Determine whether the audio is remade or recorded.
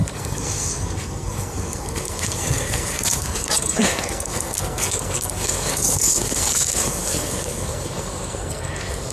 remade